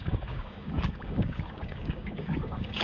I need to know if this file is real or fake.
fake